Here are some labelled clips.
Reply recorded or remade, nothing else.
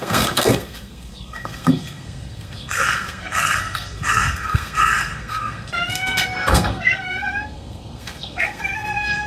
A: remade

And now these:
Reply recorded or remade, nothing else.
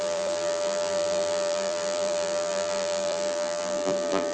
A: remade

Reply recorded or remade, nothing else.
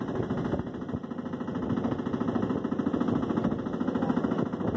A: recorded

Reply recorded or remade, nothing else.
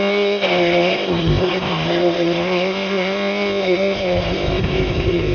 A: remade